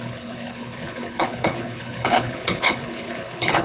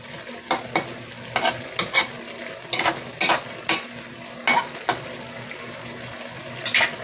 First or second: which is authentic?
second